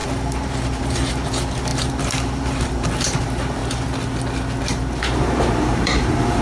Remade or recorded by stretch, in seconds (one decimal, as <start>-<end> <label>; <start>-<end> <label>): 0.0-3.6 remade; 3.6-4.6 recorded; 4.6-6.4 remade